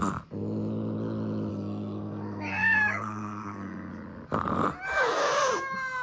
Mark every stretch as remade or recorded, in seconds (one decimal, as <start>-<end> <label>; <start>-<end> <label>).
0.0-1.5 recorded; 1.5-3.9 remade; 3.9-6.0 recorded